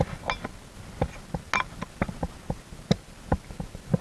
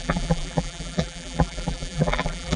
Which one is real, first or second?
first